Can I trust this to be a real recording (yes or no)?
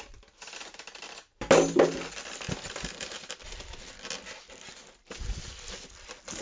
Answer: yes